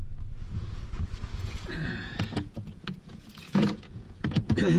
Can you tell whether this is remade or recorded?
remade